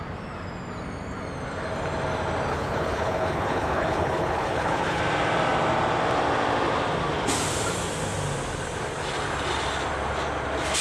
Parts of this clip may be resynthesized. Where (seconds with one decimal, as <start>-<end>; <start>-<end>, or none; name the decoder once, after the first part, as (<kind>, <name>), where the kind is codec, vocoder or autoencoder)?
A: 2.5-5.0 (codec, HILCodec)